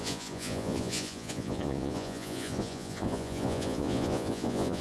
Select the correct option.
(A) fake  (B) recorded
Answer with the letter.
A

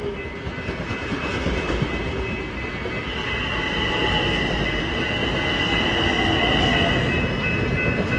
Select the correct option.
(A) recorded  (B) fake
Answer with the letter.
A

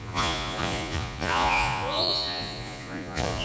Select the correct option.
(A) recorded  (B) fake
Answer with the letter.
B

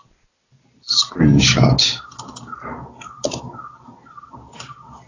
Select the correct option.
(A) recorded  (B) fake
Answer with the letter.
A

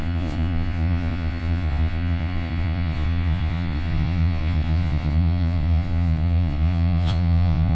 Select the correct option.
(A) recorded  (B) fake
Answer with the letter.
B